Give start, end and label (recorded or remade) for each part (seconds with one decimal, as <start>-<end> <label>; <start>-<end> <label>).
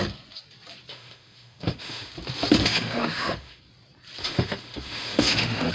0.0-0.9 recorded; 0.9-2.1 remade; 2.1-2.6 recorded; 2.6-3.6 remade; 3.6-4.2 recorded; 4.2-5.7 remade